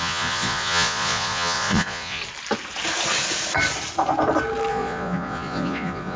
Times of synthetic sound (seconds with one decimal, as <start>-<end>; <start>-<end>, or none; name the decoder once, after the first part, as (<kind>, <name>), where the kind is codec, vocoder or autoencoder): 0.0-2.2 (vocoder, Vocos); 4.7-6.2